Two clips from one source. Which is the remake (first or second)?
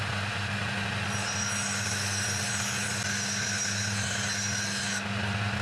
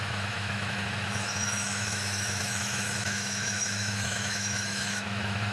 second